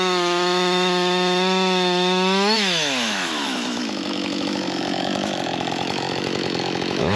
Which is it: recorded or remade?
remade